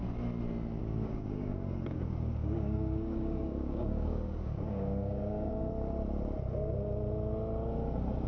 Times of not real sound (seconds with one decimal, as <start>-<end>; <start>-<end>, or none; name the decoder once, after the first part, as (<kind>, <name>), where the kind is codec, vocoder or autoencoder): 0.8-5.7 (codec, DAC)